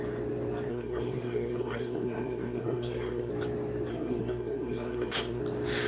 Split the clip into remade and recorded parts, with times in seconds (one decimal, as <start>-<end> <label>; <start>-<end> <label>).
0.0-0.7 recorded; 0.7-3.3 remade; 3.3-3.9 recorded; 3.9-5.4 remade; 5.4-5.9 recorded